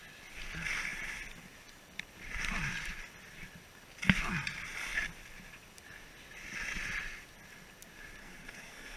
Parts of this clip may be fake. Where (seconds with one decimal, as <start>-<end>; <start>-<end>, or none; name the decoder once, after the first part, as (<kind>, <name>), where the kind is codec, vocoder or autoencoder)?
8.2-9.0 (codec, SNAC)